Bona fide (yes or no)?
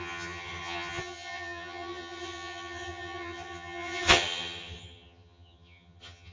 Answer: no